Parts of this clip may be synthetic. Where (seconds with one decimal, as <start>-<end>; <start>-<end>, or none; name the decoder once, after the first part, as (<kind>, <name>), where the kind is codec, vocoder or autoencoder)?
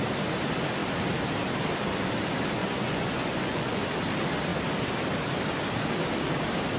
2.6-3.8 (vocoder, Vocos)